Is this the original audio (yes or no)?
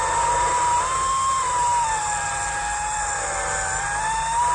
yes